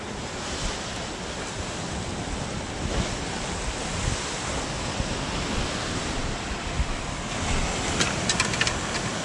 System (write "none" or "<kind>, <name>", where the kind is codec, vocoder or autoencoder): none